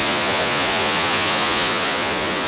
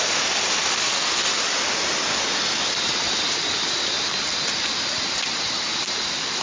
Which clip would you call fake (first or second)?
first